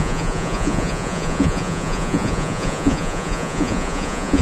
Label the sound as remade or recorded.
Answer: remade